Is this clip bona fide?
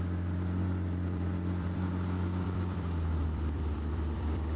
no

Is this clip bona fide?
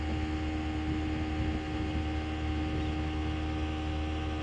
yes